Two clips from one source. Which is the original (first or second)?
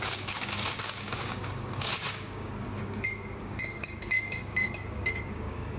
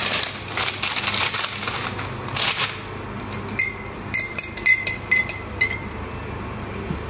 second